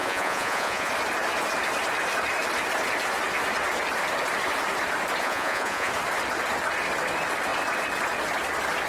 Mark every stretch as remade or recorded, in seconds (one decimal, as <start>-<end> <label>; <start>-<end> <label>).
0.0-0.9 remade; 0.9-5.2 recorded; 5.2-5.9 remade; 5.9-8.9 recorded